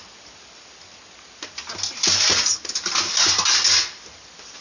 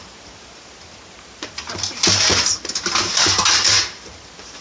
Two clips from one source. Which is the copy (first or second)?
second